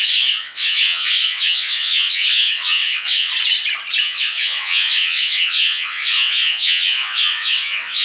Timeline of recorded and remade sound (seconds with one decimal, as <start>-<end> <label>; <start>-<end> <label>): 0.0-3.3 remade; 3.3-4.0 recorded; 4.0-8.0 remade